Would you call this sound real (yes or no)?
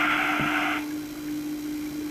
yes